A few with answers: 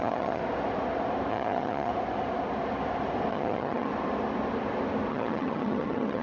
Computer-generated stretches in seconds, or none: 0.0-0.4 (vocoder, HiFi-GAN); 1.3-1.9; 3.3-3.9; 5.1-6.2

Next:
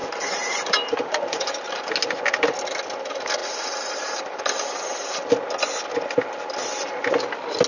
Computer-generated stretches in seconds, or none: 0.0-1.9 (vocoder, BigVGAN v2); 3.4-4.4